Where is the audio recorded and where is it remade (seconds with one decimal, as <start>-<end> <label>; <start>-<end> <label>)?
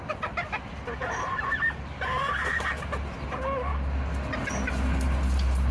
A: 0.0-5.7 recorded